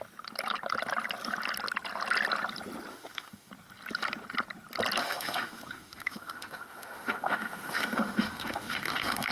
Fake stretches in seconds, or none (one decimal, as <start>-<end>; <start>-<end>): 2.9-3.5; 5.0-9.3